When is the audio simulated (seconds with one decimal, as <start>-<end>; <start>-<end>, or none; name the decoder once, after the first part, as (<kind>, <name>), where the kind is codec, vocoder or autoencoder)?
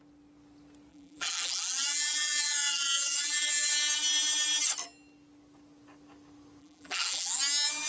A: 0.9-3.7 (vocoder, BigVGAN v2); 6.6-7.4